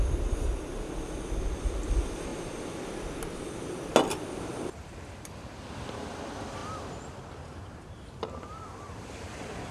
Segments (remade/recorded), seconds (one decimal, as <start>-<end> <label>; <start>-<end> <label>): 0.0-2.3 remade; 2.3-4.9 recorded; 4.9-9.7 remade